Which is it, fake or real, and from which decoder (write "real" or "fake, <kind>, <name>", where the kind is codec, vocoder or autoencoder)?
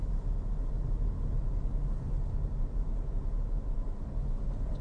real